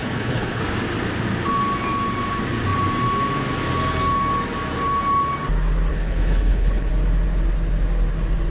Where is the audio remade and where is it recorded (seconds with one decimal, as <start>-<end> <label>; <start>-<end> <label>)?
0.0-0.6 remade; 0.6-5.9 recorded; 5.9-6.9 remade; 6.9-8.5 recorded